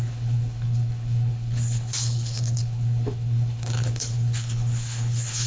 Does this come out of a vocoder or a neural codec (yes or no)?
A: yes